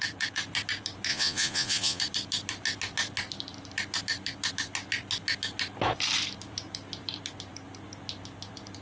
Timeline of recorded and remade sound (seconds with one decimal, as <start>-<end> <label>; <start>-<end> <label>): 0.0-1.1 recorded; 1.1-2.0 remade; 2.0-8.8 recorded